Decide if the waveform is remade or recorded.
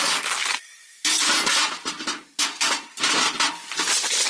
recorded